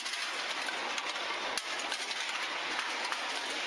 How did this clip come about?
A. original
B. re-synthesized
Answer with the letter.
A